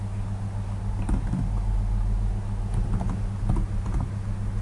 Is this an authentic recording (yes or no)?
yes